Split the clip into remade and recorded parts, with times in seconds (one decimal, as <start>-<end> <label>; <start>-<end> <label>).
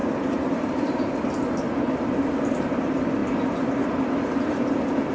0.0-1.1 remade; 1.1-5.1 recorded